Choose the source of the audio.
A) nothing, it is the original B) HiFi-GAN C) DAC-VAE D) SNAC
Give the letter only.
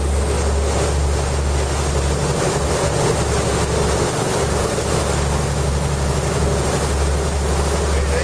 A